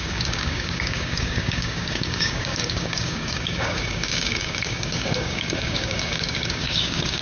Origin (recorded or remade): remade